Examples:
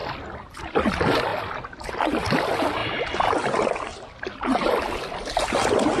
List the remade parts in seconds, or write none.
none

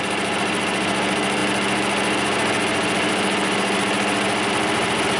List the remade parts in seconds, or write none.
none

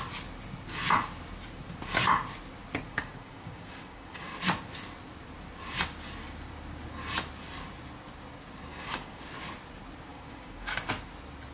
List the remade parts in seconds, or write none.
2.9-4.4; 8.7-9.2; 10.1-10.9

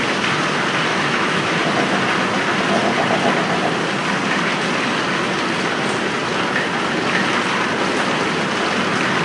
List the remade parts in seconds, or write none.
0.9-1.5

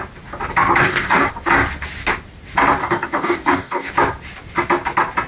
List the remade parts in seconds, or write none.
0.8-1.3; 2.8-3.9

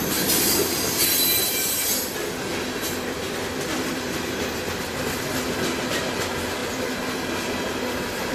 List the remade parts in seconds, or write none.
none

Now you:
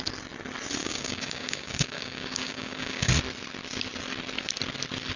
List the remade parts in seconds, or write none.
0.8-3.1

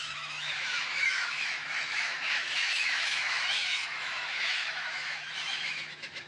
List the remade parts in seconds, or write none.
0.0-6.3